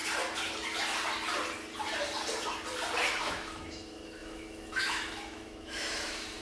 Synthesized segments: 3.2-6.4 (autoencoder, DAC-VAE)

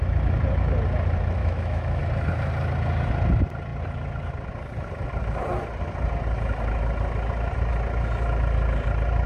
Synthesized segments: 1.4-2.0 (autoencoder, DAC-VAE)

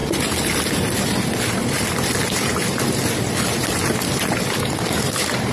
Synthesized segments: none